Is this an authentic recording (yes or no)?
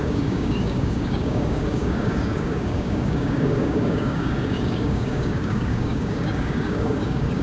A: no